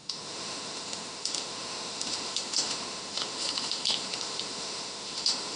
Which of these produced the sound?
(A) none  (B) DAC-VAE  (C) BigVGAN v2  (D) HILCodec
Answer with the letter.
B